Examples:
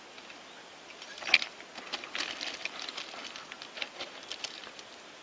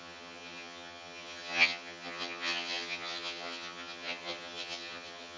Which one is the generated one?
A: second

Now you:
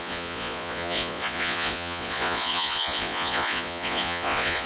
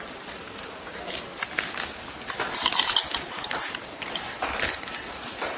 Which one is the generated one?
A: first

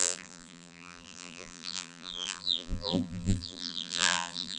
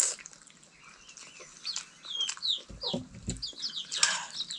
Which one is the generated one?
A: first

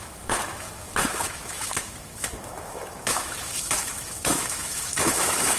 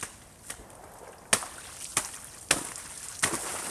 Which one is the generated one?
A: first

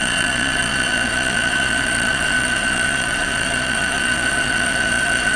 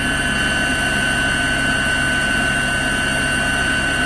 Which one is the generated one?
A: first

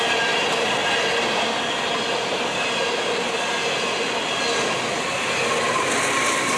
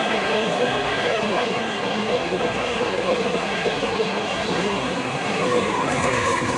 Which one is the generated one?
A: second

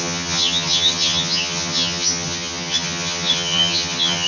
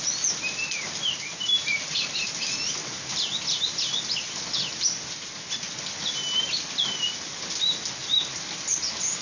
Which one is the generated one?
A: first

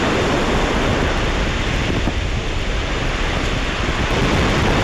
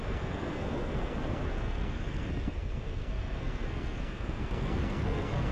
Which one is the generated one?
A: second